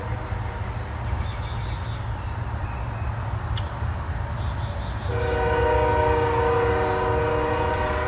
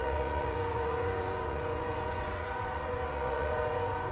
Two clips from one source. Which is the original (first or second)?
first